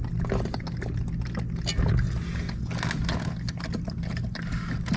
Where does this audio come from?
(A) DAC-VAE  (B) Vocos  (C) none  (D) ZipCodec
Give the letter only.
C